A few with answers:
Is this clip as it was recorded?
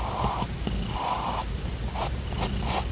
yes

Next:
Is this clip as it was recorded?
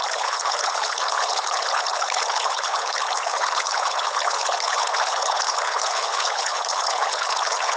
no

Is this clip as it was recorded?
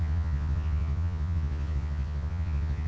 no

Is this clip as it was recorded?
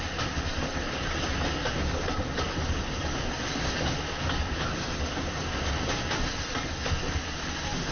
yes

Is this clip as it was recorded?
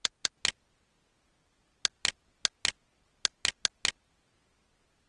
yes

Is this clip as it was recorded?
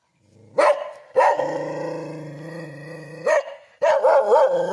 yes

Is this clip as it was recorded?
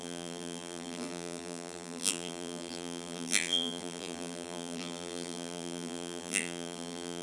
no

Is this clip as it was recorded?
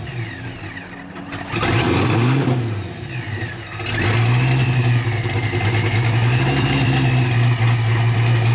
yes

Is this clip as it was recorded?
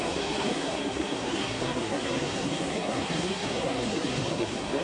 no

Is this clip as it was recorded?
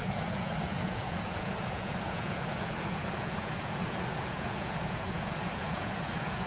no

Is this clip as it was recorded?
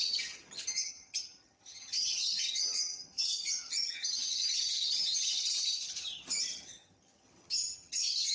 no